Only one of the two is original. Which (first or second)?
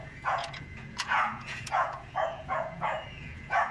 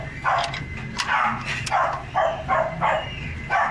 second